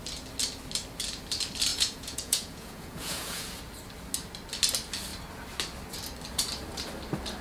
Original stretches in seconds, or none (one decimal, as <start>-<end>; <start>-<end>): 0.0-1.7; 3.5-7.4